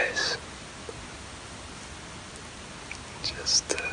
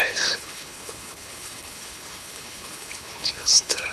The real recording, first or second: first